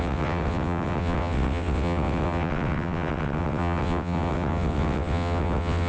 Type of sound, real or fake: fake